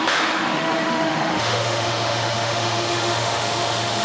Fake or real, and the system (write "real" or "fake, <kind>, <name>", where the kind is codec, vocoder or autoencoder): fake, autoencoder, DAC-VAE